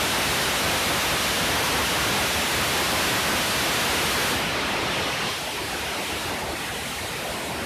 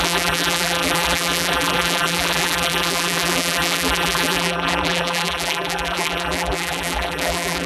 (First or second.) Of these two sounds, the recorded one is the first